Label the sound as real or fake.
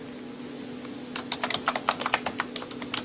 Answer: real